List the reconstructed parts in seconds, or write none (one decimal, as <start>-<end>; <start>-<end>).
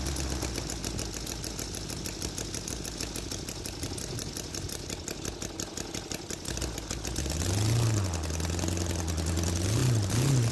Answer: none